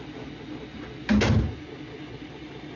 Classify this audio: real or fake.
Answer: real